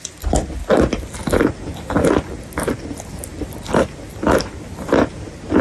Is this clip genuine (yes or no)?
yes